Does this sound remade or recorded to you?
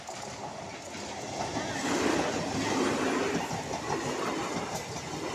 recorded